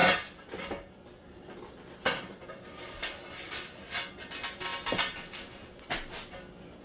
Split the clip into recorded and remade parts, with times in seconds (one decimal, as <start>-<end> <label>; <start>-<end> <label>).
0.0-6.8 recorded